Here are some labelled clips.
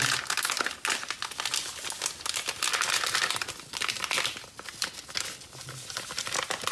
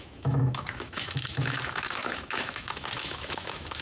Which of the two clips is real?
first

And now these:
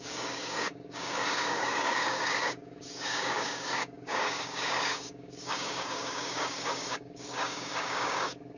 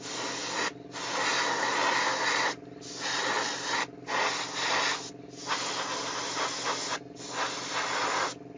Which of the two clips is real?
second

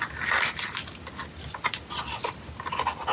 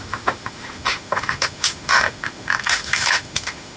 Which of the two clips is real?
first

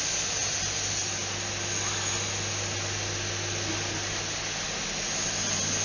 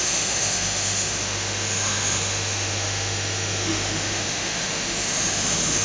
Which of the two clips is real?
first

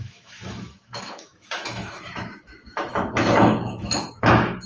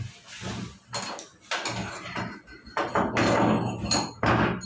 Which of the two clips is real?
second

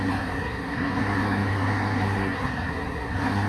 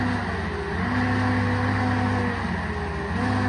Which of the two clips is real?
second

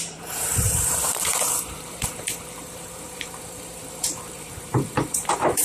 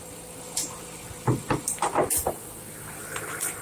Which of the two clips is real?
second